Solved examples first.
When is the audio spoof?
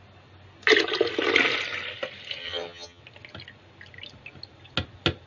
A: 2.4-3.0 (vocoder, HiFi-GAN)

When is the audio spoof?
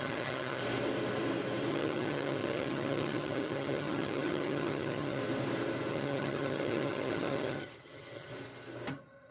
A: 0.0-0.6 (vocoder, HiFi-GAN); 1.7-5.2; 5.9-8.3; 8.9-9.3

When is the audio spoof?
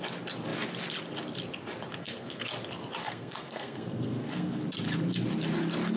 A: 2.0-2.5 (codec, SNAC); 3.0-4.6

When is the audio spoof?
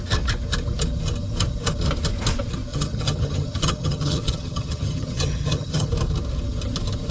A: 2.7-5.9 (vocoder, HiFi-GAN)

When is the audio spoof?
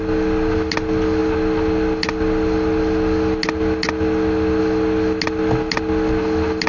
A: none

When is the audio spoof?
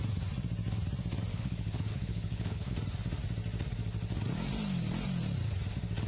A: 1.3-2.7 (codec, HILCodec)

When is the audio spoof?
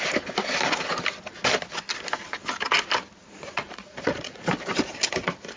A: 3.2-4.5 (vocoder, Vocos)